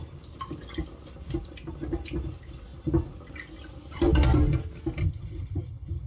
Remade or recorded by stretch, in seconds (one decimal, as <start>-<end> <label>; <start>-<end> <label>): 0.0-5.0 recorded; 5.0-6.1 remade